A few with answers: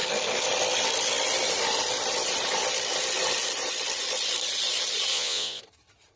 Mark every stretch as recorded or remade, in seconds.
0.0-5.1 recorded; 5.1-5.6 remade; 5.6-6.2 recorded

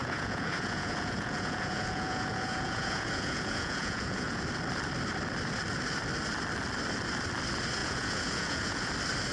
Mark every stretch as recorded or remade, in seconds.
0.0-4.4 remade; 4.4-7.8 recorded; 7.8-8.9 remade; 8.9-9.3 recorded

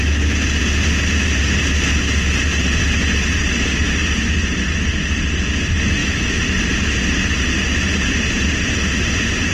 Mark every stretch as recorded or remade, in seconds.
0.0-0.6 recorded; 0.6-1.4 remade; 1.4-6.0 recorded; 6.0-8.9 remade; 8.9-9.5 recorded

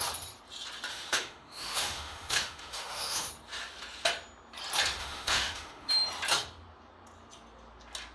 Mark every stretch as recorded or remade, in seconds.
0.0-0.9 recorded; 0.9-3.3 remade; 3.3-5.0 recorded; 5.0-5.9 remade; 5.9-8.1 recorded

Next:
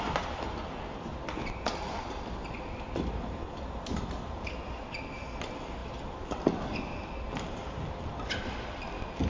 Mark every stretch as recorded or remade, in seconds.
0.0-9.3 recorded

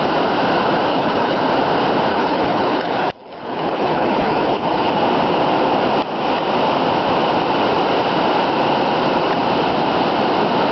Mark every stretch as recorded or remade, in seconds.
0.0-0.9 recorded; 0.9-1.4 remade; 1.4-2.1 recorded; 2.1-4.9 remade; 4.9-10.7 recorded

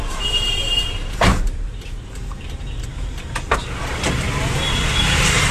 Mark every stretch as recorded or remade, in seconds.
0.0-3.6 remade; 3.6-5.0 recorded; 5.0-5.5 remade

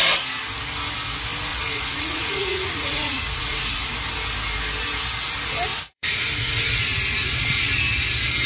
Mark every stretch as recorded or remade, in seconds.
0.0-1.5 recorded; 1.5-3.9 remade; 3.9-5.7 recorded; 5.7-7.8 remade; 7.8-8.5 recorded